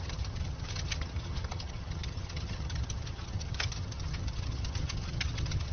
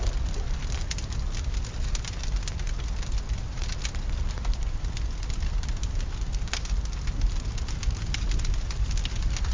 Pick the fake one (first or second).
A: first